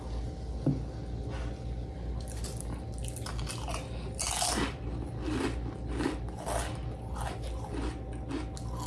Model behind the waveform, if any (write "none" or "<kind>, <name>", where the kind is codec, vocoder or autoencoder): none